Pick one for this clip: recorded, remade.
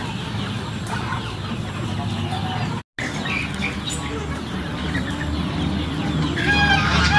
recorded